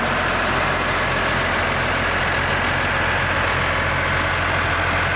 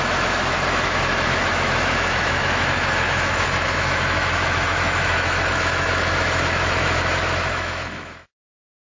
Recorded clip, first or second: first